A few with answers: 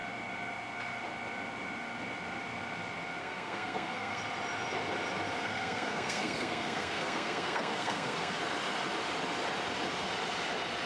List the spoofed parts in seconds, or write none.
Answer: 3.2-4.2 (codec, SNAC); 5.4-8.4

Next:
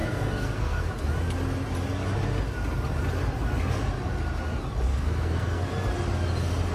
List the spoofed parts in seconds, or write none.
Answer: 0.0-0.9 (codec, SNAC); 4.9-5.7